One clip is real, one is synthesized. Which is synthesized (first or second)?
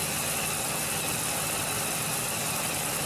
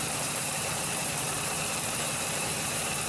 second